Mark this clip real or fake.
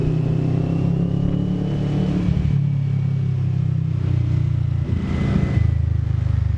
real